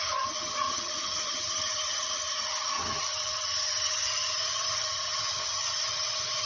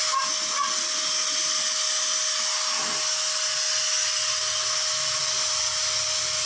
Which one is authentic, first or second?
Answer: second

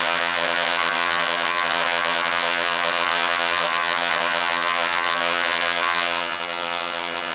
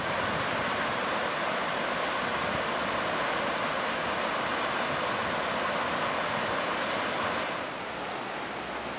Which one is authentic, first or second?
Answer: second